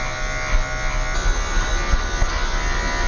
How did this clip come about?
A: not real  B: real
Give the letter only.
B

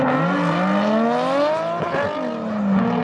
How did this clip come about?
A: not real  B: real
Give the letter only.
B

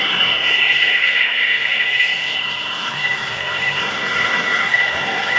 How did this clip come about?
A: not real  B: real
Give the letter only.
A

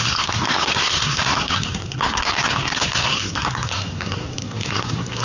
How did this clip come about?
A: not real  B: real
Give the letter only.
A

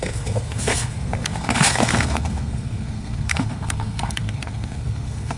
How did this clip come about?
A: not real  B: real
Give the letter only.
A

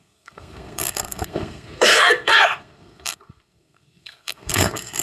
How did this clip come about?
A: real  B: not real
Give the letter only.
B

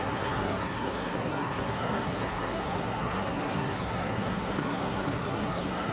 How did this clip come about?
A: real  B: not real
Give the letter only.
B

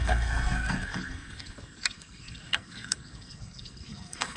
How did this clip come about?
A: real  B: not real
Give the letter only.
B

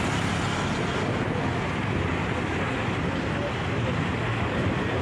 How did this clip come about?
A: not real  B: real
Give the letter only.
B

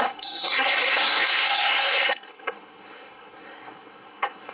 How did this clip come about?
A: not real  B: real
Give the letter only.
A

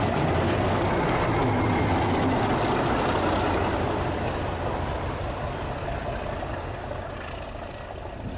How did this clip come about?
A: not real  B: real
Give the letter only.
B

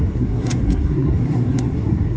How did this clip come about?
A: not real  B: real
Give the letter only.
A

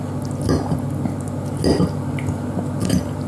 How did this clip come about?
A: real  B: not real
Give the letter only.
A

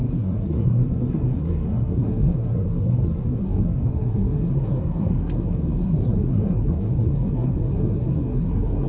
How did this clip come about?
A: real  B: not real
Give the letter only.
B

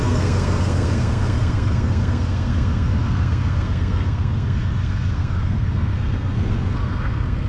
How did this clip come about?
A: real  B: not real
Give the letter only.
B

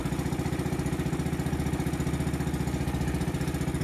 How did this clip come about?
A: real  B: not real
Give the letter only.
A